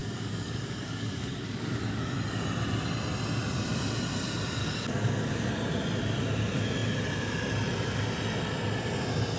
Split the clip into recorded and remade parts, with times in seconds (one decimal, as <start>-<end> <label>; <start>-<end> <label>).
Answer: 0.0-2.1 remade; 2.1-4.6 recorded; 4.6-5.5 remade; 5.5-9.4 recorded